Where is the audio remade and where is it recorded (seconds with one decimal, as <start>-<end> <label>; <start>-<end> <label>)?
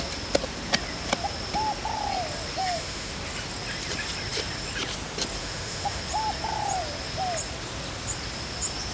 0.0-2.6 recorded; 2.6-3.1 remade; 3.1-5.4 recorded; 5.4-6.0 remade; 6.0-8.9 recorded